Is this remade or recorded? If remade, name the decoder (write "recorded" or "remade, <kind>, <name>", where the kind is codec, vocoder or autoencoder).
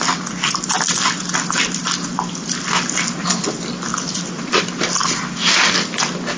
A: recorded